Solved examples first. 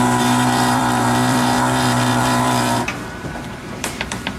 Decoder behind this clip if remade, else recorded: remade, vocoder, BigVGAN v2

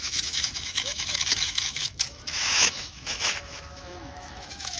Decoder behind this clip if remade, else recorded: remade, autoencoder, DAC-VAE